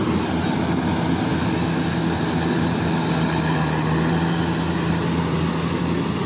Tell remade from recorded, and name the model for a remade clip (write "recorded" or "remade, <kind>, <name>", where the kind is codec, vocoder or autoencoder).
recorded